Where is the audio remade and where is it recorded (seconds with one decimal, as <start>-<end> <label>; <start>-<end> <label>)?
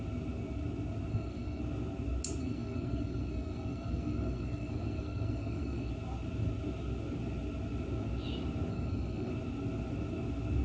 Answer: 0.0-1.1 recorded; 1.1-1.6 remade; 1.6-2.4 recorded; 2.4-5.9 remade; 5.9-8.7 recorded; 8.7-9.3 remade; 9.3-10.6 recorded